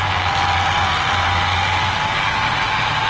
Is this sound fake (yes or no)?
no